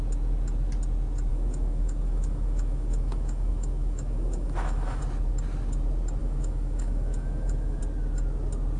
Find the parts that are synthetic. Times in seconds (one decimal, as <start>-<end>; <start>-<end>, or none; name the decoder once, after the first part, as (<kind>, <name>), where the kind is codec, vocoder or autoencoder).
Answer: 1.3-5.0 (autoencoder, DAC-VAE); 6.2-7.8